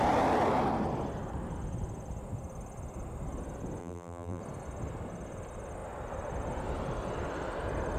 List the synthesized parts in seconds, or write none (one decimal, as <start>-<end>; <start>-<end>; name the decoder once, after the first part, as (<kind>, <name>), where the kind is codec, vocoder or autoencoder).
3.8-4.4 (vocoder, BigVGAN v2)